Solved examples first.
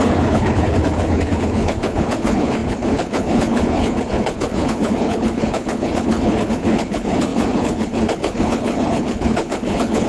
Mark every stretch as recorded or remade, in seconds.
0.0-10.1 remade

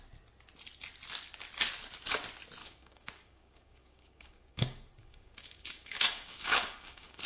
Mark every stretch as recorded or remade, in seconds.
0.0-2.6 recorded; 2.6-7.3 remade